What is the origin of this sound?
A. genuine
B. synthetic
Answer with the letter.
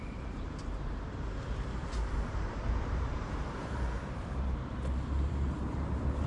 B